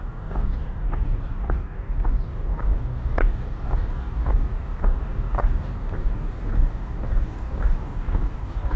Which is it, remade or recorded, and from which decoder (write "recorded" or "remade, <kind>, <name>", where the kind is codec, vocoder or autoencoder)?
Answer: remade, codec, DAC